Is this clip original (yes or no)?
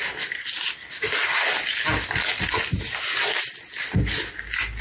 yes